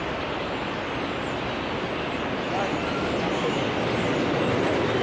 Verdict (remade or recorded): recorded